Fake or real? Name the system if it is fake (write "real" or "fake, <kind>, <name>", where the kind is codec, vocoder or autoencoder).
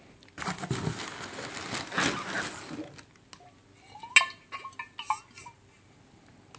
real